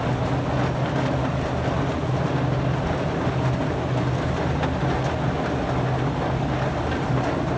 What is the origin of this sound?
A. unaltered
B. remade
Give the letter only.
A